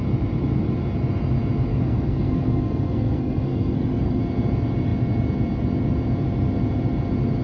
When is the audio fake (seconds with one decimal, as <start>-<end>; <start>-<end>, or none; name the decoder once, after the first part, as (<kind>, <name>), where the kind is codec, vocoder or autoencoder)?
1.7-4.2 (codec, SNAC)